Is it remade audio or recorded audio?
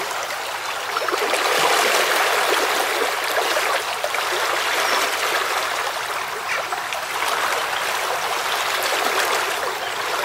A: recorded